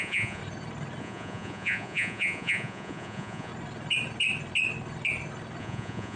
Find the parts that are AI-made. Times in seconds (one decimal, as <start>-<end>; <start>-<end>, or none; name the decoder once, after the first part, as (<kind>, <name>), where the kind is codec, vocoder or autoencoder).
0.0-0.4 (vocoder, Vocos); 1.0-3.5; 5.6-6.2